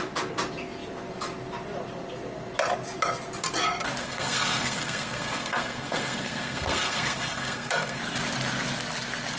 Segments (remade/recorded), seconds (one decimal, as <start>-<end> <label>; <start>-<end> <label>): 0.0-4.0 recorded; 4.0-8.0 remade; 8.0-9.4 recorded